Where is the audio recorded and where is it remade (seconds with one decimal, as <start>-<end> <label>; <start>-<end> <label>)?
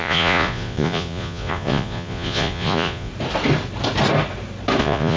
0.0-3.1 remade; 3.1-4.8 recorded; 4.8-5.2 remade